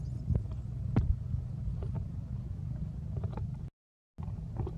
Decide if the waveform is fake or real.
real